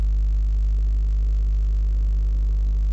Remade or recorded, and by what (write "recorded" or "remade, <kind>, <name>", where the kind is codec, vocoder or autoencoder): recorded